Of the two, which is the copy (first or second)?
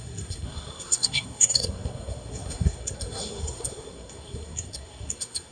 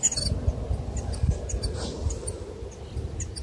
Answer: first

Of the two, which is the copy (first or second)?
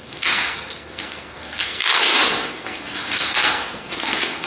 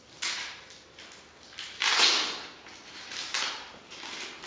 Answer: first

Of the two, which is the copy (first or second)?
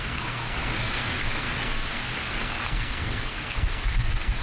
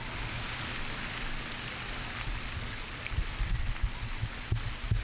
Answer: first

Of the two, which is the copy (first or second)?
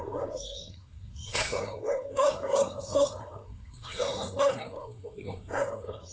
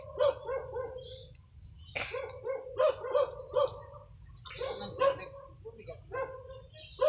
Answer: first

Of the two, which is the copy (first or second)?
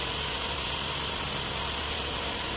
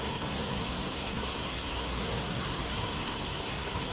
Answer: second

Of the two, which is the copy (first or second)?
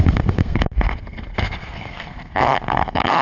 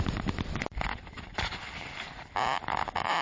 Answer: first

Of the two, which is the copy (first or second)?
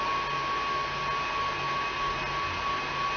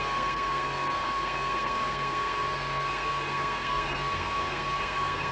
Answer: second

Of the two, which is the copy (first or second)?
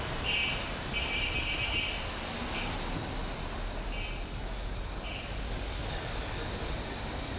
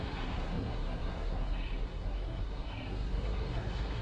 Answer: second